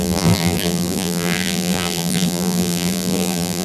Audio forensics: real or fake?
fake